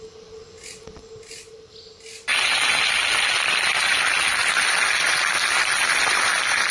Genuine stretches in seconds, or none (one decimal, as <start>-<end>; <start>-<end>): 0.0-6.7